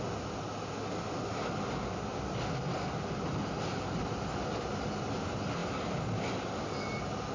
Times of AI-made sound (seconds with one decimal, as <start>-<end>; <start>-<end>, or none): none